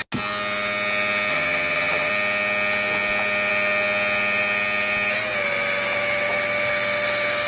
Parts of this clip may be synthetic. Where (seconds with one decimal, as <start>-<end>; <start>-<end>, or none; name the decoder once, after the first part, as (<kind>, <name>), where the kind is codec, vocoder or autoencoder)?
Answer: 1.3-2.1 (vocoder, HiFi-GAN)